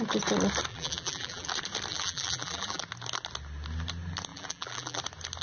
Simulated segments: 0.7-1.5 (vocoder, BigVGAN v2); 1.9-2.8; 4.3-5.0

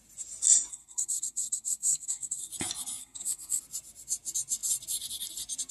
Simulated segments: 0.7-2.5 (codec, SNAC); 3.0-3.6

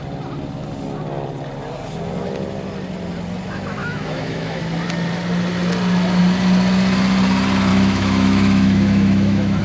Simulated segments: 3.8-4.6 (autoencoder, DAC-VAE); 7.7-9.6

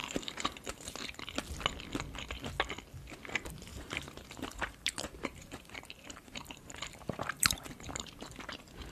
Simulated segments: 0.0-1.2 (vocoder, BigVGAN v2); 3.7-8.1

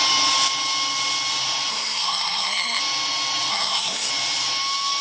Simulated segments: 1.7-2.8 (codec, SNAC); 3.5-4.1

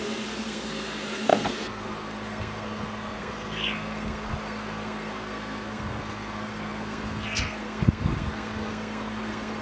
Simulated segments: 0.0-9.6 (codec, SNAC)